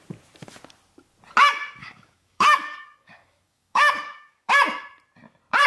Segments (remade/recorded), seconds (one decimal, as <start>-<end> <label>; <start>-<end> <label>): 0.0-1.8 recorded; 1.8-4.5 remade; 4.5-5.7 recorded